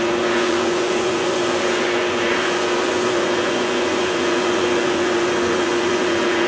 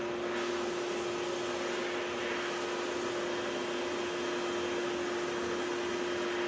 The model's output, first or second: first